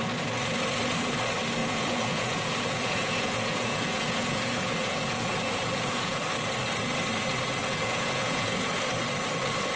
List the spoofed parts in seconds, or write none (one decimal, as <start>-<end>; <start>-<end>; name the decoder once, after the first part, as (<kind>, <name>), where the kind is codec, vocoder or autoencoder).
1.6-6.2 (vocoder, Vocos); 7.6-8.7